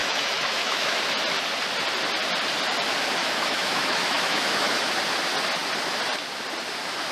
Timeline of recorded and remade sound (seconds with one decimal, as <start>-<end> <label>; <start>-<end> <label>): 0.0-1.0 remade; 1.0-3.2 recorded; 3.2-4.9 remade; 4.9-7.1 recorded